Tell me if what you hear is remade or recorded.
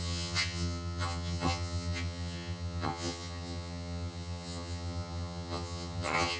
remade